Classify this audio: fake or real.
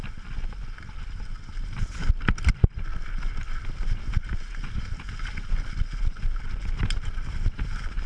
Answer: real